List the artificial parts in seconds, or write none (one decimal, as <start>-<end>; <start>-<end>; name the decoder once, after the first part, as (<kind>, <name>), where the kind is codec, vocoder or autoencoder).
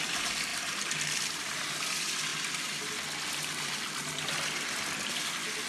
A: none